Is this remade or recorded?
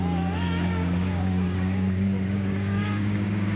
remade